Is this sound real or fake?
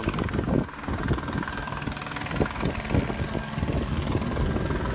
real